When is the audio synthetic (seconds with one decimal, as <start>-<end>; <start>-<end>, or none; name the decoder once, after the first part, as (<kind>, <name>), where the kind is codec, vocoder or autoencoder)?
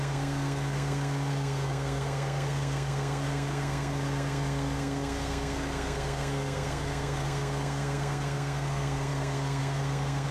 0.0-10.3 (codec, SNAC)